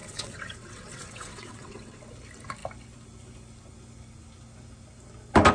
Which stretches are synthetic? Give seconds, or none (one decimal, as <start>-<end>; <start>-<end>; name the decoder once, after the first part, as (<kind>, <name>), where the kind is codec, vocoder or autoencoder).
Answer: 0.0-2.0 (vocoder, WaveNeXt)